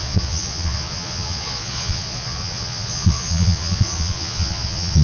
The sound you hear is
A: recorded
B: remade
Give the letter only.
B